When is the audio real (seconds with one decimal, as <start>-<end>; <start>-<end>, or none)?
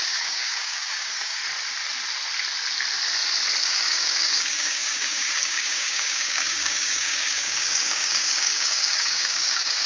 1.4-3.6